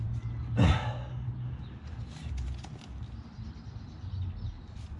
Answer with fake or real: real